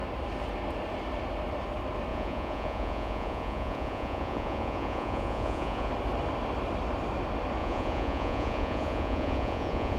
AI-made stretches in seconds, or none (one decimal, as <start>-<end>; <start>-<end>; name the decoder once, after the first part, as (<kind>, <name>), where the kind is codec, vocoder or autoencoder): 2.1-5.9 (vocoder, Vocos); 7.6-10.0